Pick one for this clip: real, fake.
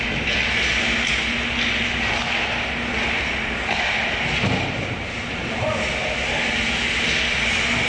real